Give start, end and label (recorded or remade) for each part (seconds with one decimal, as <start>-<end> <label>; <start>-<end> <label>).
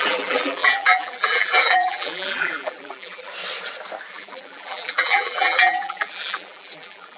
0.0-3.3 remade; 3.3-4.1 recorded; 4.1-7.2 remade